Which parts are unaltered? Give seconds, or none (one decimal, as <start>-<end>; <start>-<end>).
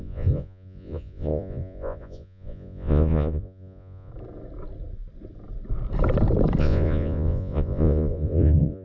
4.1-6.6